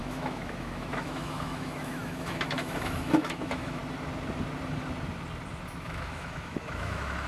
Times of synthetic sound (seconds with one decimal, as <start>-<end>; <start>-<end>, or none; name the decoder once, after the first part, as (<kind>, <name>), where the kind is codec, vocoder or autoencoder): 0.0-3.8 (autoencoder, DAC-VAE); 5.8-7.3